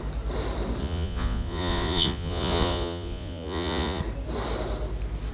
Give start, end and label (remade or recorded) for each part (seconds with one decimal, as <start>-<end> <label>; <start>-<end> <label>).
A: 0.0-0.8 recorded; 0.8-4.0 remade; 4.0-5.3 recorded